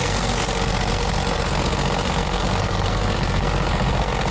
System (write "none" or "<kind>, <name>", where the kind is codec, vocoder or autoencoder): codec, SNAC